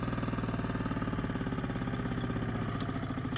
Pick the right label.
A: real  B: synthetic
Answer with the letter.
A